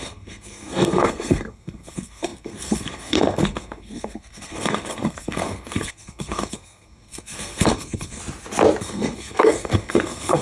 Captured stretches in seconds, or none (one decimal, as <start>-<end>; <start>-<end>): 8.2-8.8